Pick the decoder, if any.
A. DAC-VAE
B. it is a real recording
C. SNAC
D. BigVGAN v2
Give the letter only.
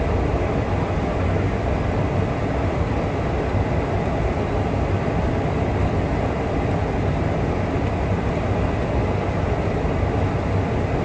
D